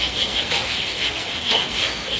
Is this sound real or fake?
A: fake